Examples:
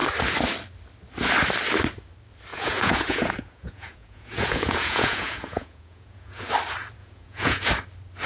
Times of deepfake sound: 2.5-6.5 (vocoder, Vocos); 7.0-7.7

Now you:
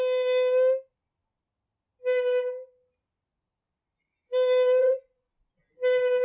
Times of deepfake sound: 4.8-5.3 (vocoder, Vocos)

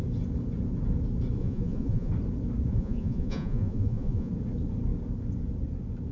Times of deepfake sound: 1.4-2.1 (vocoder, Vocos); 2.7-4.3

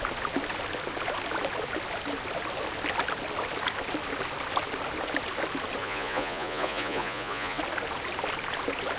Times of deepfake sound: 5.8-7.6 (vocoder, Vocos)